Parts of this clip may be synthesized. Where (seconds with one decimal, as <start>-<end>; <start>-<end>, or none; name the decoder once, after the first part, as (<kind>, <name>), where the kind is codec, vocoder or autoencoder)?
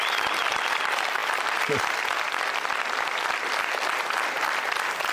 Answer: none